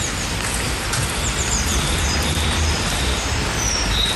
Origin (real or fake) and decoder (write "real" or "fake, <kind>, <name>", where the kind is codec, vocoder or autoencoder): fake, vocoder, BigVGAN v2